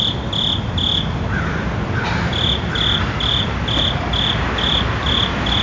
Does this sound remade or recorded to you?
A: recorded